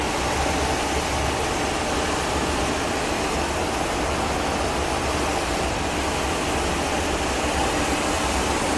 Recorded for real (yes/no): yes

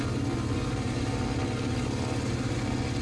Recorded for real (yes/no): yes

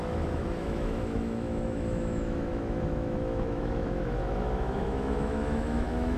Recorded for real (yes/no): no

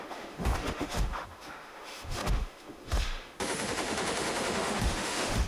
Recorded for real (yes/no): no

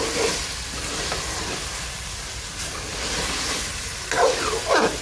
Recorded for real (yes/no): yes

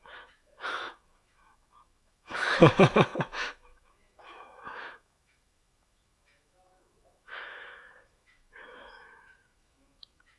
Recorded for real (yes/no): no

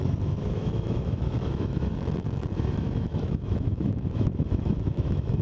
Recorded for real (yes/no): no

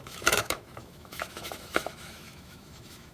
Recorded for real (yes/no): no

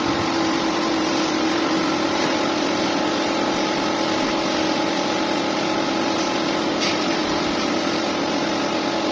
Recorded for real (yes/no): yes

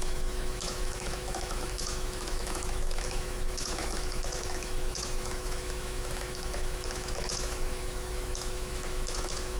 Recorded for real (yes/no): no